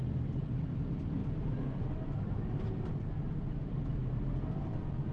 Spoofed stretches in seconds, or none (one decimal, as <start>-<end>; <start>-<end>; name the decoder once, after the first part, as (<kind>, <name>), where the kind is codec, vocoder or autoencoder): 1.2-3.1 (vocoder, BigVGAN v2)